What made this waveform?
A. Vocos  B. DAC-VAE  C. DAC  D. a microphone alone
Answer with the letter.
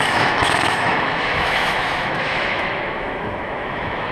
B